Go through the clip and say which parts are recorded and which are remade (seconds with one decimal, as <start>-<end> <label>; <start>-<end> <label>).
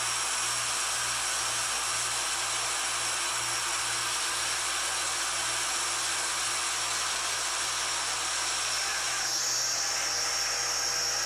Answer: 0.0-8.9 recorded; 8.9-9.4 remade; 9.4-11.3 recorded